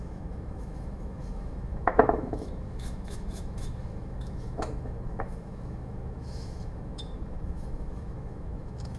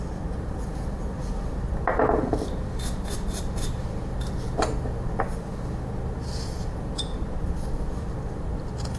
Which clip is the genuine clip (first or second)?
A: second